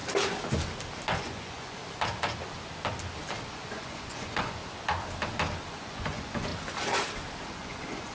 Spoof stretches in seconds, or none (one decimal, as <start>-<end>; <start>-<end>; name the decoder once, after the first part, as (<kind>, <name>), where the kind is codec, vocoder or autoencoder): 1.2-1.8 (vocoder, Vocos); 3.5-4.6; 5.7-6.5; 7.5-8.1